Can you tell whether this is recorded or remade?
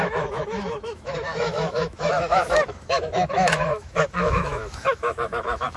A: remade